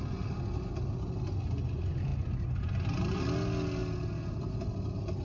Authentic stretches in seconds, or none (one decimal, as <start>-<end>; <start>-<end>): 0.0-5.2